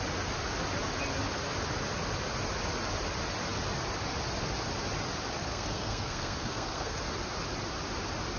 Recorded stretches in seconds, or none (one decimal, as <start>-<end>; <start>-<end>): 0.0-5.5; 7.0-8.4

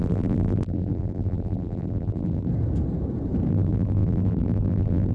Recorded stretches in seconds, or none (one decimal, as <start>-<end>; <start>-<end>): 2.5-3.5

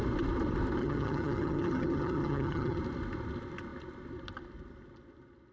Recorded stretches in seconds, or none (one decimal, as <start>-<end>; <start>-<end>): 0.0-0.8; 2.8-5.5

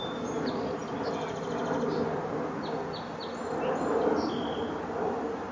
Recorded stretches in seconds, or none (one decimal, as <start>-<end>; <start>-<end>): 0.0-5.5